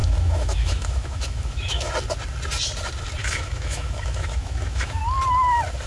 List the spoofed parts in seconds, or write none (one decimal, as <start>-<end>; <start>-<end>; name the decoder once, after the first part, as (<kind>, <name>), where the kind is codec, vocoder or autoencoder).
0.0-1.9 (autoencoder, DAC-VAE); 3.2-5.0